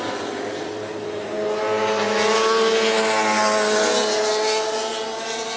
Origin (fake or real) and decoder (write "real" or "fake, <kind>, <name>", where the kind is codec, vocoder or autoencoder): real